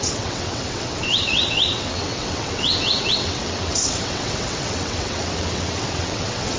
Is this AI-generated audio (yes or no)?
yes